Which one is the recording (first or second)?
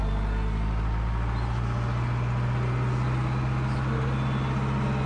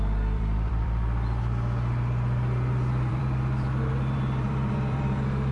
first